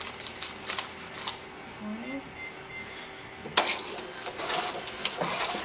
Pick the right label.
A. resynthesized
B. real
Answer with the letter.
B